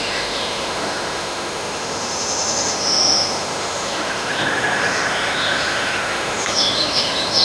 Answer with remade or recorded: remade